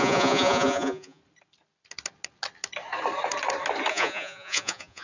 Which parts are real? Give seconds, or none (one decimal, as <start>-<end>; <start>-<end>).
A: 1.2-3.9